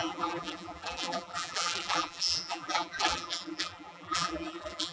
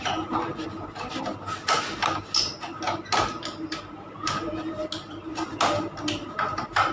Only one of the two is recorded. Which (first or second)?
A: second